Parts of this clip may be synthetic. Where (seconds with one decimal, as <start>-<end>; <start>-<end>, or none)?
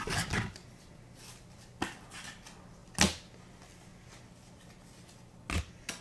none